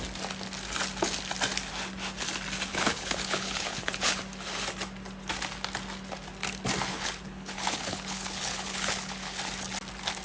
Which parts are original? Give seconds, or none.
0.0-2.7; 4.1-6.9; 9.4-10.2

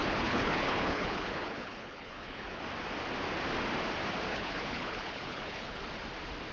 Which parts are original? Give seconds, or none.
2.6-4.3; 5.8-6.5

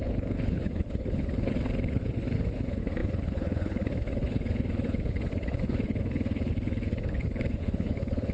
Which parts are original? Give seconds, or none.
none

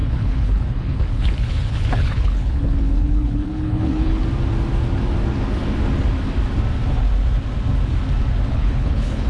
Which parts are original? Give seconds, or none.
4.2-8.5

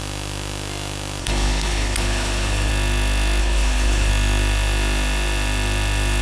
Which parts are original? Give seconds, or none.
0.0-1.2; 2.7-3.4; 4.1-6.2